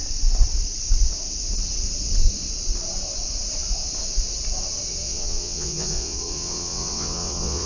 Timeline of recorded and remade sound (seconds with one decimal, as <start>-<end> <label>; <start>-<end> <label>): 0.0-5.0 recorded; 5.0-7.7 remade